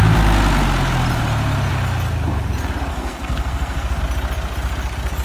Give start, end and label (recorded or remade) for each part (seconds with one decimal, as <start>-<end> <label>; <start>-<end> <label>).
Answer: 0.0-2.9 recorded; 2.9-4.0 remade; 4.0-5.2 recorded